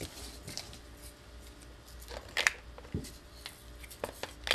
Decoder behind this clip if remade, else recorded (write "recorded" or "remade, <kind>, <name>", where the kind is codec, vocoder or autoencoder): recorded